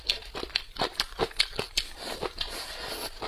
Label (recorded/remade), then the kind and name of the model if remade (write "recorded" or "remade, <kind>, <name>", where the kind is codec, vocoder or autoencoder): recorded